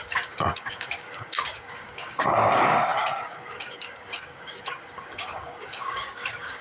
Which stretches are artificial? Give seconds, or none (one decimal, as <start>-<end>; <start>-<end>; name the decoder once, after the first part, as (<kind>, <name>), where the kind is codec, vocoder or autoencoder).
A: 0.0-6.6 (codec, DAC)

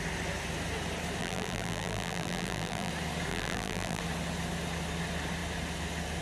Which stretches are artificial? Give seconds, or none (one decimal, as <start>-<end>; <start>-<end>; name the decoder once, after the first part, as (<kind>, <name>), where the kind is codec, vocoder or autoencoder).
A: 1.2-2.9 (vocoder, BigVGAN v2); 3.3-4.0

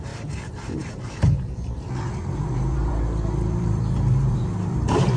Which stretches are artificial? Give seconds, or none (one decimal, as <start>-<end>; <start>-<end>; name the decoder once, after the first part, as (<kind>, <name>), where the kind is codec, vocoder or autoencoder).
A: 0.0-5.2 (vocoder, BigVGAN v2)

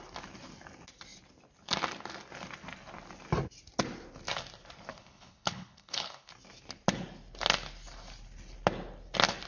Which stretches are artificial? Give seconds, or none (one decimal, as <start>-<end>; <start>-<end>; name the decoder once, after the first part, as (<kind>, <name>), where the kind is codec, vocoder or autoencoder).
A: 4.9-6.3 (codec, HILCodec)